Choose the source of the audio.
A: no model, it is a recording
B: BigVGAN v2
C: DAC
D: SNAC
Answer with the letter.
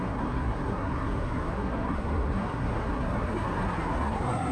D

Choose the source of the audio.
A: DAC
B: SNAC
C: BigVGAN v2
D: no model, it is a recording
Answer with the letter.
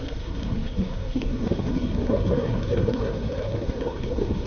B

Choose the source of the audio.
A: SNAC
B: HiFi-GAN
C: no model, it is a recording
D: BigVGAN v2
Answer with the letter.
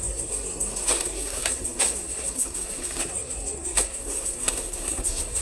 A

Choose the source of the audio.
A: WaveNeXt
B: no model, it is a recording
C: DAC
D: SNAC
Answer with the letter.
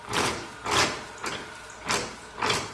B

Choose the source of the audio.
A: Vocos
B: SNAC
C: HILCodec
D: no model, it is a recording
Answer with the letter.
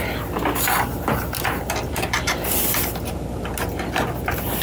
D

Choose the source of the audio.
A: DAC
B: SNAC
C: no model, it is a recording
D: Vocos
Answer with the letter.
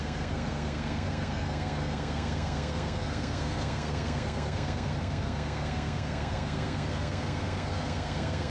B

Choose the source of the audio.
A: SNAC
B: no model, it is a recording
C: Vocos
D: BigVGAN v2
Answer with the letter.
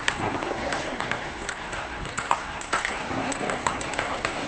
A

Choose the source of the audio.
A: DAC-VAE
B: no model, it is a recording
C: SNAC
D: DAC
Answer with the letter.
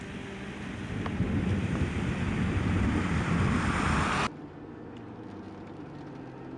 B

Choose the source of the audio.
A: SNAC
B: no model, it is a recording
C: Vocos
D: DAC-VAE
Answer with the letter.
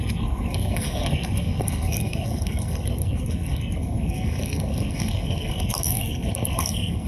A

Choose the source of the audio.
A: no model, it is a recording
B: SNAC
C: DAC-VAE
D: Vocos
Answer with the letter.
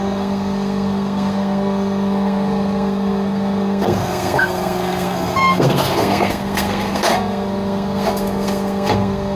B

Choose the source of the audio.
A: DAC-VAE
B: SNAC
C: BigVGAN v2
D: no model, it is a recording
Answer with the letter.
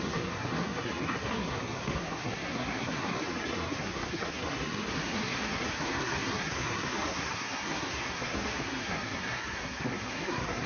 B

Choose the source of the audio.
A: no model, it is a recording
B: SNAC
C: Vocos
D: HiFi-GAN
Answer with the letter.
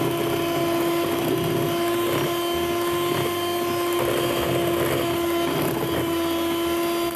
A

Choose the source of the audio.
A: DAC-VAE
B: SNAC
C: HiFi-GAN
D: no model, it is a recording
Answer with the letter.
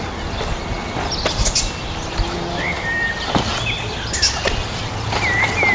D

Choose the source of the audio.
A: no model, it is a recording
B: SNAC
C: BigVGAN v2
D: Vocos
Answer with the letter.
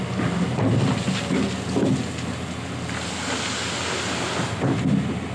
A